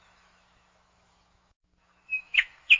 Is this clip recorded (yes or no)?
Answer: no